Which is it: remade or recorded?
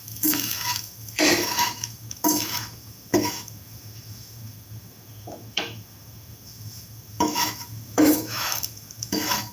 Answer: remade